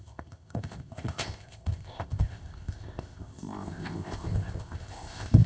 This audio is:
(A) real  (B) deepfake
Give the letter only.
B